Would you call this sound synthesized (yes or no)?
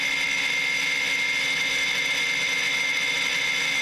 no